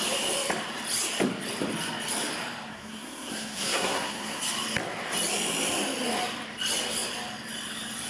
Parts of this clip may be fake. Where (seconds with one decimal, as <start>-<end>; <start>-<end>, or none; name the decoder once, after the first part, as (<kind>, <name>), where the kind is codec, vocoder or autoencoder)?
2.7-4.4 (codec, SNAC)